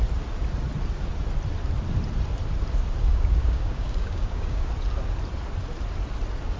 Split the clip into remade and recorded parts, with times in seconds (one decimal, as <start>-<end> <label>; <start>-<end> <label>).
0.0-3.1 recorded; 3.1-4.7 remade; 4.7-6.6 recorded